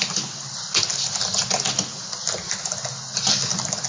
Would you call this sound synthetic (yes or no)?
no